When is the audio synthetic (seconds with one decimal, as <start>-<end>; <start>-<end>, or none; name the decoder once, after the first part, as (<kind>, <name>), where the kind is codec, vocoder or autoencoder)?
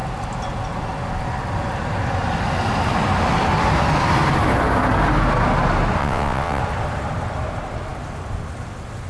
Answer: 6.0-6.6 (vocoder, WaveNeXt)